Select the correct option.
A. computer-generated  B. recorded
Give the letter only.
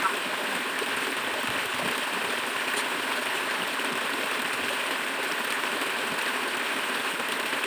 B